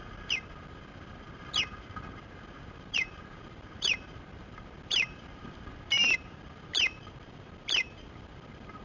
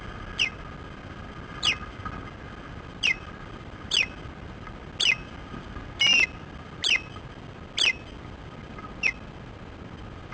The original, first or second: second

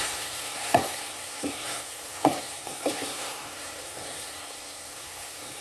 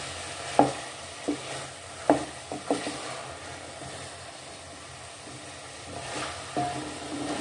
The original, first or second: second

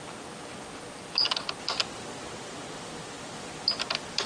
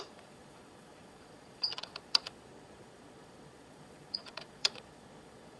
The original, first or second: first